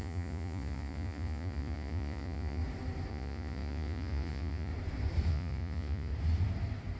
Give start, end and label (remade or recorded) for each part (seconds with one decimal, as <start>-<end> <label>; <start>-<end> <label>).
0.0-2.6 remade; 2.6-3.1 recorded; 3.1-4.7 remade; 4.7-5.3 recorded; 5.3-6.1 remade; 6.1-7.0 recorded